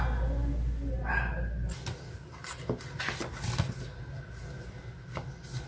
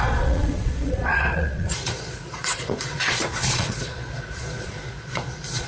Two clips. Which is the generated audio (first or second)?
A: second